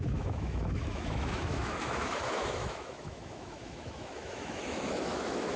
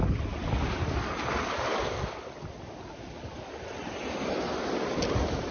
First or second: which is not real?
first